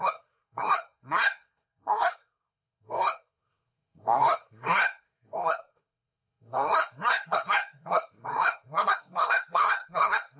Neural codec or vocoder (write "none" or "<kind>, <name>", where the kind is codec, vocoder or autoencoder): codec, SNAC